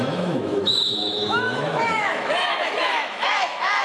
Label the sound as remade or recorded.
remade